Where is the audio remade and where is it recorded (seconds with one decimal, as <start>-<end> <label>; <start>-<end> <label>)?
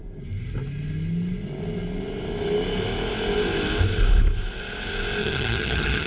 0.0-5.2 recorded; 5.2-6.1 remade